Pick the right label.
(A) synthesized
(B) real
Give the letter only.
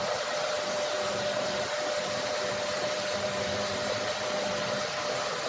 A